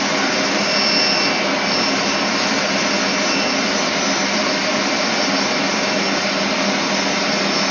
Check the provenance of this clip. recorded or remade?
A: recorded